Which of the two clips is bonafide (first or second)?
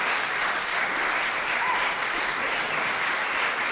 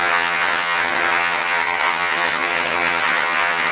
first